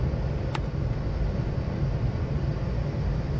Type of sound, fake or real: real